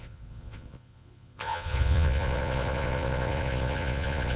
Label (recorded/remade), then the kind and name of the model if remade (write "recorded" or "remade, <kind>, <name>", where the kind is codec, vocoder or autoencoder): remade, vocoder, Vocos